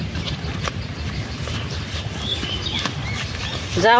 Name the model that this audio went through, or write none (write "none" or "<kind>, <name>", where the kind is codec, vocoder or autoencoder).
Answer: none